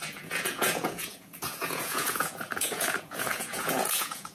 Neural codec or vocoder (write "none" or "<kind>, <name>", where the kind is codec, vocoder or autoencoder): vocoder, Vocos